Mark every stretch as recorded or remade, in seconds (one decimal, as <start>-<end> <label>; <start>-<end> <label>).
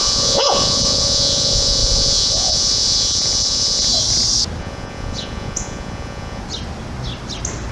0.0-3.9 remade; 3.9-4.6 recorded; 4.6-6.4 remade; 6.4-7.7 recorded